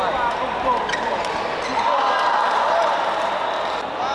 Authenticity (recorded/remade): recorded